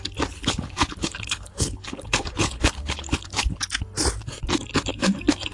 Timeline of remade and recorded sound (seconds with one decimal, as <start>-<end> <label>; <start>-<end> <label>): 0.0-0.4 recorded; 0.4-3.6 remade; 3.6-5.5 recorded